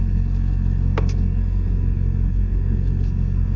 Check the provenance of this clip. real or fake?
fake